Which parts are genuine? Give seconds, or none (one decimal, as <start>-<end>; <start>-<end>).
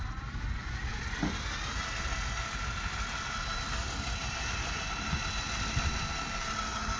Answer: 0.0-4.2; 5.8-7.0